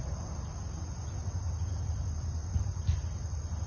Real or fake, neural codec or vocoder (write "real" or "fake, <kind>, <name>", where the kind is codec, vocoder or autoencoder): real